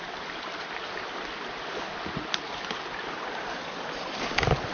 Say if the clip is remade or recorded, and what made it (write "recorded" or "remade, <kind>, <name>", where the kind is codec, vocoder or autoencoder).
recorded